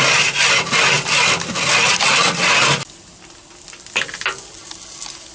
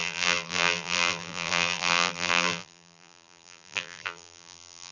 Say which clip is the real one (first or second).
first